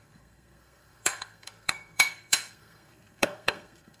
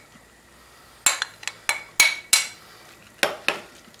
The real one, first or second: second